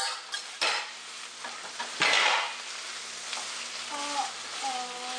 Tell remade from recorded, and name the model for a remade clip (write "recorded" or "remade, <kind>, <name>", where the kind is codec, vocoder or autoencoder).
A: recorded